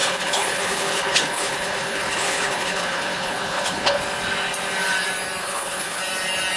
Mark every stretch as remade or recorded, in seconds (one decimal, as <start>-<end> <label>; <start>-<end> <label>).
0.0-4.0 remade; 4.0-5.4 recorded; 5.4-6.0 remade; 6.0-6.6 recorded